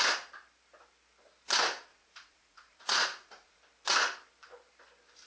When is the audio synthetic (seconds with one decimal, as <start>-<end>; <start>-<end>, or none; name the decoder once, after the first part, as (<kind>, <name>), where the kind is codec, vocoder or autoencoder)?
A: 1.9-3.6 (vocoder, Vocos)